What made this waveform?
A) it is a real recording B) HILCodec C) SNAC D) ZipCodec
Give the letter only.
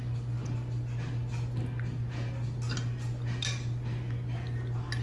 A